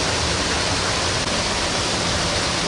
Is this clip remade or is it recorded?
recorded